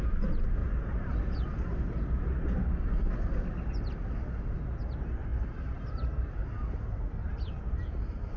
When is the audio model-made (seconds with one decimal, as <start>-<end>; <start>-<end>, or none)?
0.6-1.3; 5.3-5.9